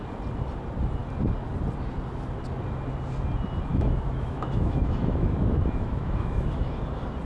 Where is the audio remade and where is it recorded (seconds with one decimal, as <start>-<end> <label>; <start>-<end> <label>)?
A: 0.0-3.7 recorded; 3.7-6.8 remade; 6.8-7.2 recorded

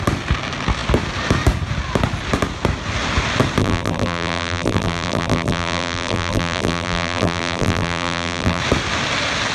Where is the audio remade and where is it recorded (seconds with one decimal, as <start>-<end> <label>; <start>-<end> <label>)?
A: 0.0-3.6 recorded; 3.6-8.6 remade; 8.6-9.5 recorded

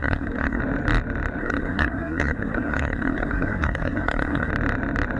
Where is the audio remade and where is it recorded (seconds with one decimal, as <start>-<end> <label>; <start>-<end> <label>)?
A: 0.0-0.6 remade; 0.6-1.4 recorded; 1.4-4.5 remade; 4.5-5.2 recorded

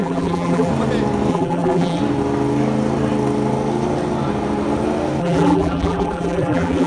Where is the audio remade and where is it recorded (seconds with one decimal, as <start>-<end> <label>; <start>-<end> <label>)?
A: 0.0-0.7 remade; 0.7-1.3 recorded; 1.3-2.0 remade; 2.0-5.2 recorded; 5.2-6.9 remade